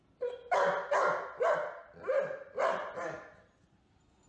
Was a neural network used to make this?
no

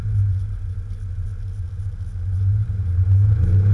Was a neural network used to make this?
no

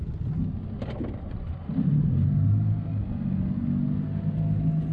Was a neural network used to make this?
no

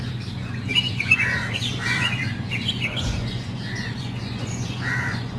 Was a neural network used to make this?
yes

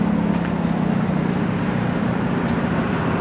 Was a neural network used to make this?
no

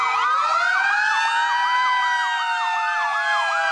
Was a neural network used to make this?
no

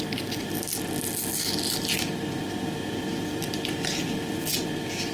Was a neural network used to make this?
no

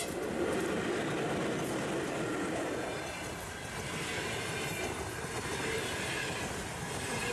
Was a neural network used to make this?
no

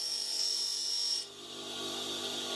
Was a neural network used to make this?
no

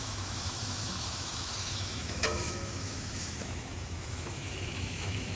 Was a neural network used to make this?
yes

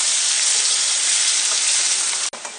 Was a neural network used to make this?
no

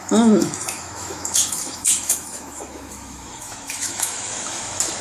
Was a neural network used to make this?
yes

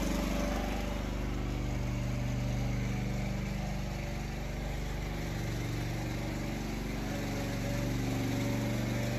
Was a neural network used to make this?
no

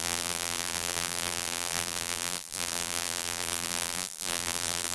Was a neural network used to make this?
yes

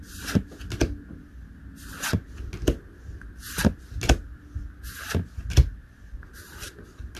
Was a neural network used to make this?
no